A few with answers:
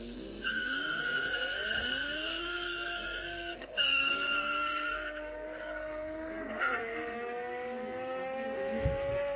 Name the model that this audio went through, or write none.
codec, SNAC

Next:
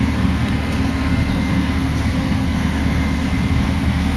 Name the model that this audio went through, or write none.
codec, SNAC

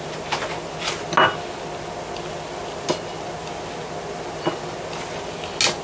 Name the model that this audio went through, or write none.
none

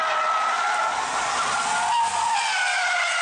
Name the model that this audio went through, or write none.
none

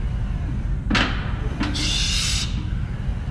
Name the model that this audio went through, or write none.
none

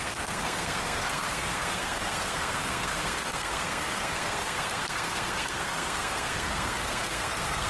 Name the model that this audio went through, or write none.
codec, SNAC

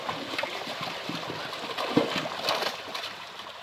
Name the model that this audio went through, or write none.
none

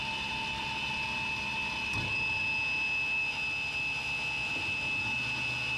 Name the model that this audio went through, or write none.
none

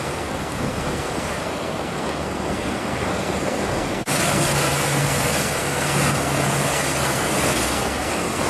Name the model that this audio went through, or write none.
codec, SNAC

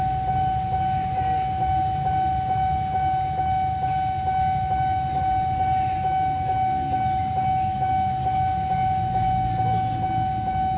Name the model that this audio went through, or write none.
none